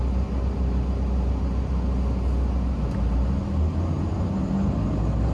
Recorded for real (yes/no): yes